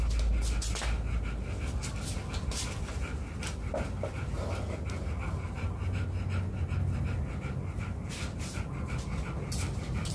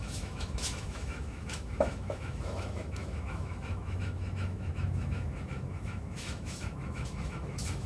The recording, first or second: first